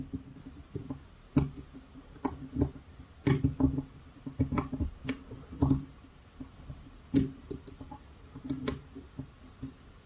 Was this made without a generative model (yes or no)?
yes